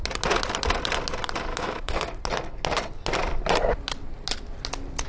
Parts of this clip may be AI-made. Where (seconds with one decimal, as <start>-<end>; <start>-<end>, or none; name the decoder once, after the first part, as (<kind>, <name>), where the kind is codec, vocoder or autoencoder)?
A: 1.5-2.2 (autoencoder, DAC-VAE)